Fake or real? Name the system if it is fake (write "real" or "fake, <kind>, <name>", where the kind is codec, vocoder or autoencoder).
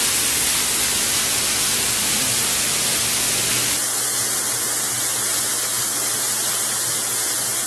real